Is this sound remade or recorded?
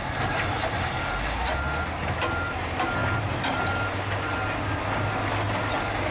recorded